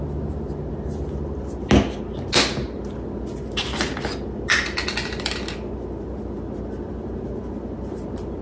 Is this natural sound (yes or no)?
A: yes